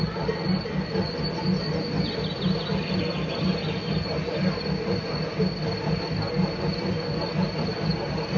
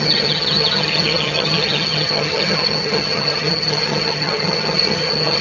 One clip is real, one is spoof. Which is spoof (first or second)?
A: second